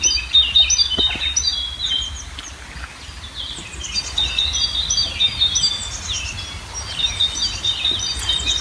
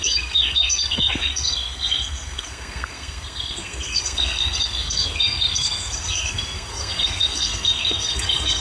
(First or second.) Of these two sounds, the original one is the first